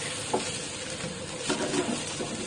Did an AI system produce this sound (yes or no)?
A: no